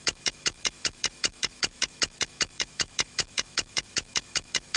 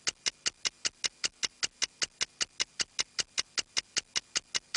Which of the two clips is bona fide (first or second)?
second